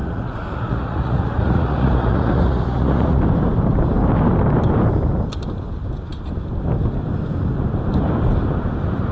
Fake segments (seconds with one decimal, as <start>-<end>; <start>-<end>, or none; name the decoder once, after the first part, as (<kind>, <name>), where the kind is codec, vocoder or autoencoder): 0.0-3.2 (vocoder, Vocos)